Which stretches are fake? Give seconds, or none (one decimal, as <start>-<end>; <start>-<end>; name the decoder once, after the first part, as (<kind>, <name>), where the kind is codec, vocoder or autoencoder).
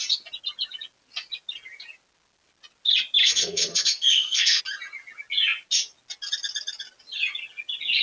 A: 3.2-4.6 (codec, SNAC)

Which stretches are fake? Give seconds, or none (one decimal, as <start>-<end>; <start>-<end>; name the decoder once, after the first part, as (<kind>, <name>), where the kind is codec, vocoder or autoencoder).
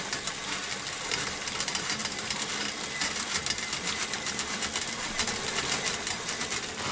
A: none